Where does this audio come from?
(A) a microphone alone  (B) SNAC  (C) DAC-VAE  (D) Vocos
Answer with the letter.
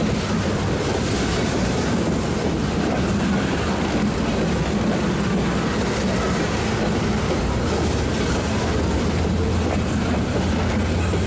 A